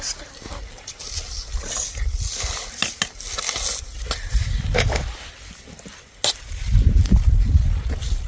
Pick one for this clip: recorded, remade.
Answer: recorded